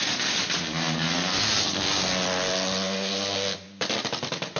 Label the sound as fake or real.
real